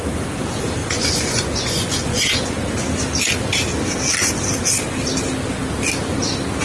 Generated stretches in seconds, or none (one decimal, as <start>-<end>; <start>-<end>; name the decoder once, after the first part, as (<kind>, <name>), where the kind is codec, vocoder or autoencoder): 0.8-2.5 (vocoder, Vocos)